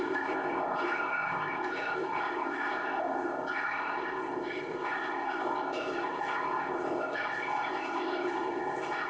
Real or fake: fake